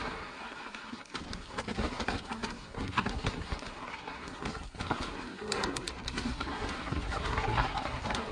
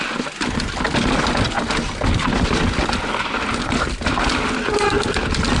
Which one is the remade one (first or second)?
first